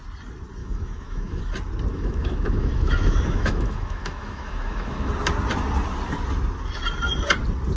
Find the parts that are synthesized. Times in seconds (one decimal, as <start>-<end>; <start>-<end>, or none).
0.6-1.4; 1.9-5.1